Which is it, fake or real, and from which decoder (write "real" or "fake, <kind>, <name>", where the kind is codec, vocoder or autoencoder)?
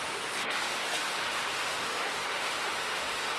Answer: fake, autoencoder, DAC-VAE